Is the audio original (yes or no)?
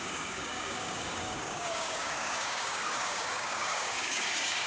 no